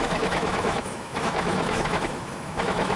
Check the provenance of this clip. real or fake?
fake